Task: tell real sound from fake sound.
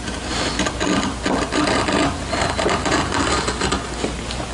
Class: real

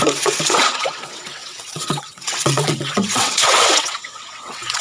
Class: fake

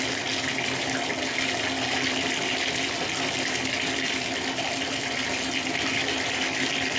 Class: real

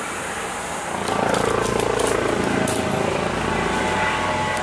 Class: real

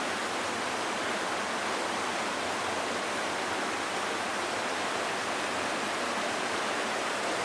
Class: real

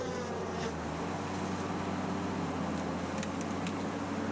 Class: real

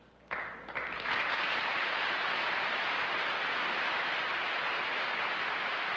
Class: real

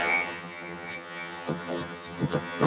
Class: fake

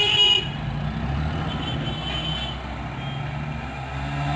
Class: real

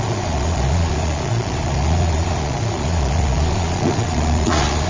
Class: fake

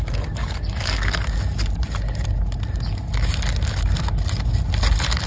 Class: real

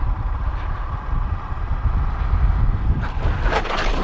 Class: real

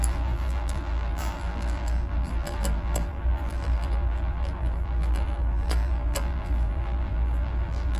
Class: fake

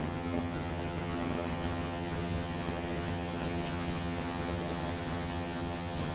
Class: fake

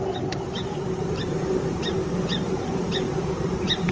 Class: real